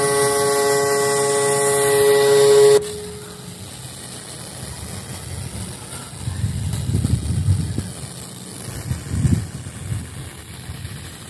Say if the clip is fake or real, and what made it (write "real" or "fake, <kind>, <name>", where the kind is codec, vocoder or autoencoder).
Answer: real